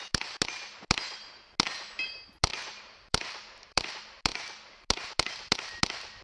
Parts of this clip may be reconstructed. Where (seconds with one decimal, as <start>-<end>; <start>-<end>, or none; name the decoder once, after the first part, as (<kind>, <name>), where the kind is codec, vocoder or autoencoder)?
2.5-3.9 (vocoder, BigVGAN v2)